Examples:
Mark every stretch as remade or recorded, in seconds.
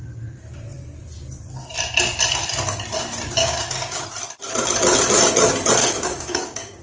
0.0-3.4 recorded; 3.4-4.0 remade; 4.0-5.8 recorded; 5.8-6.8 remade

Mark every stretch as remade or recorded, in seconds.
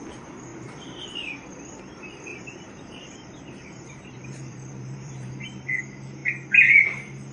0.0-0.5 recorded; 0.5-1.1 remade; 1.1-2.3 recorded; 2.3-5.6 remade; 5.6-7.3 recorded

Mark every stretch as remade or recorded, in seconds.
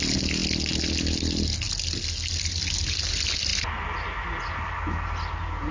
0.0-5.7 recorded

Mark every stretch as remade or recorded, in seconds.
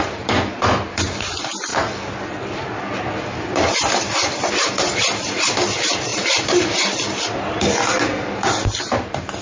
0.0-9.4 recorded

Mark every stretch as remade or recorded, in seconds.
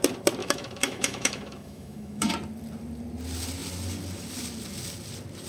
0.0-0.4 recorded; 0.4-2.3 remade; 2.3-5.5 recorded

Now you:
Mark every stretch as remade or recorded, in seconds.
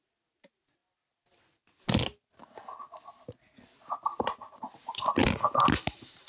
0.0-6.3 recorded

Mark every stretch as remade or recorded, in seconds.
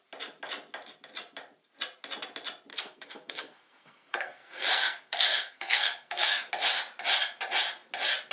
0.0-2.7 recorded; 2.7-6.5 remade; 6.5-8.3 recorded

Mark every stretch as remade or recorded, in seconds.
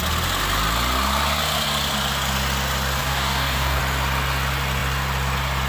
0.0-3.0 recorded; 3.0-3.8 remade; 3.8-5.7 recorded